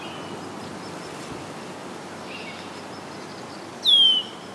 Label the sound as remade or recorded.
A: recorded